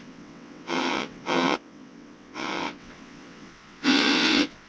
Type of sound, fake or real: fake